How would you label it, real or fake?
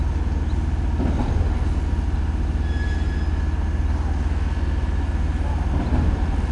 real